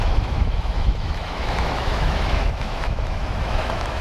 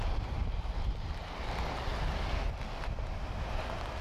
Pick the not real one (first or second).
first